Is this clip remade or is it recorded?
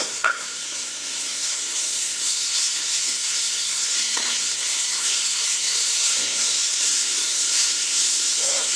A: remade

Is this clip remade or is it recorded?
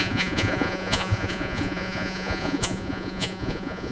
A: remade